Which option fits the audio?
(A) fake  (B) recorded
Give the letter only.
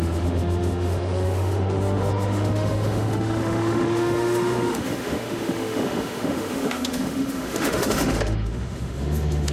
A